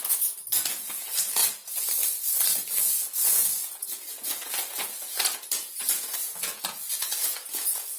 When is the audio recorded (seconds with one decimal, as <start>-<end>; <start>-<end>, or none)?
1.4-2.8